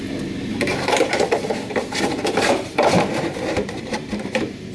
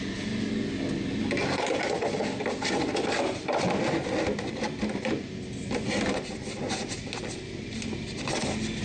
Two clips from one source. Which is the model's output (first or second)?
first